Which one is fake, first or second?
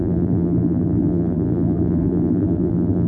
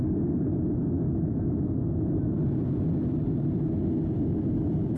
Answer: first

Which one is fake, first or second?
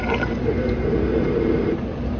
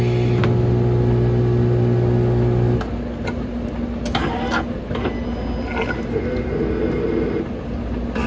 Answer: first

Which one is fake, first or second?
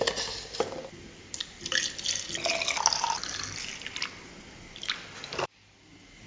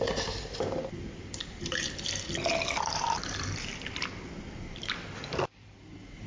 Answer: second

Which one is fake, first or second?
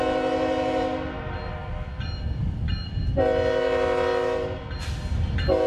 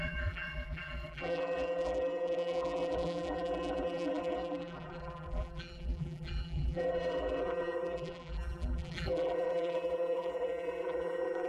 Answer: second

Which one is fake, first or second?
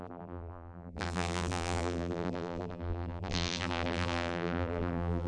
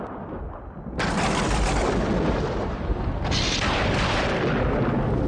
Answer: first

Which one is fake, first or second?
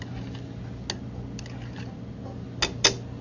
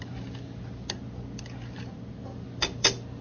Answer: second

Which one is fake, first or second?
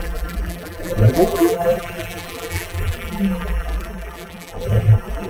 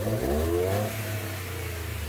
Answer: first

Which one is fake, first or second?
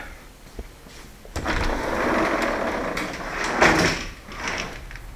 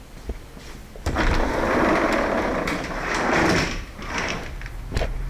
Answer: second